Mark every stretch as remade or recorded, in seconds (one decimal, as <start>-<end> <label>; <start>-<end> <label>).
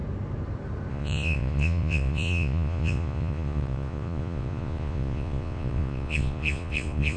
0.0-0.9 recorded; 0.9-7.2 remade